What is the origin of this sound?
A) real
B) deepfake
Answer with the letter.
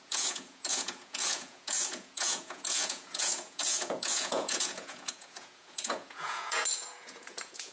B